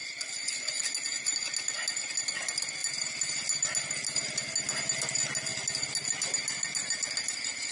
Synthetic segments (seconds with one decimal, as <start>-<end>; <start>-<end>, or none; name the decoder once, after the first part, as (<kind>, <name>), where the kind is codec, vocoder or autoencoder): 0.0-0.8 (vocoder, Vocos)